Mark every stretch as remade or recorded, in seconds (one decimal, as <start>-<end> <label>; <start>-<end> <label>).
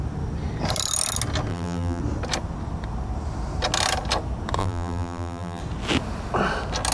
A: 0.0-1.5 recorded; 1.5-2.0 remade; 2.0-4.6 recorded; 4.6-5.6 remade; 5.6-6.9 recorded